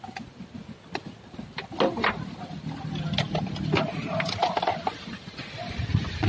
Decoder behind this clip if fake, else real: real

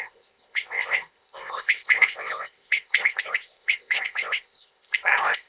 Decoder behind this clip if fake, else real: fake, codec, ZipCodec